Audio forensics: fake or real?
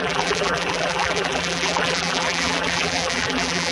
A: fake